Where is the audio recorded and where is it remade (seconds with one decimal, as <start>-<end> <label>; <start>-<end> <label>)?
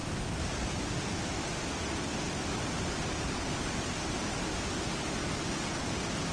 0.0-6.3 recorded